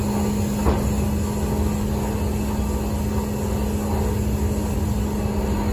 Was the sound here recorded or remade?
recorded